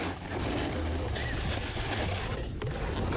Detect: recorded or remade recorded